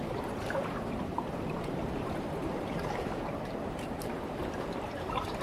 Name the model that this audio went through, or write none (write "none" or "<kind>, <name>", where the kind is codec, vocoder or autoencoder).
vocoder, BigVGAN v2